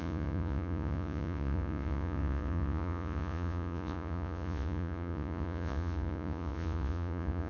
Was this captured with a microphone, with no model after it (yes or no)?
no